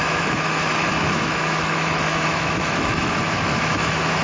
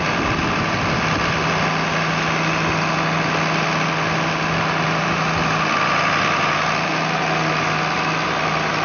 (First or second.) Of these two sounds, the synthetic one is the first